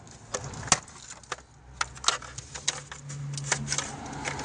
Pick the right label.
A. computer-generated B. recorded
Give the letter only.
B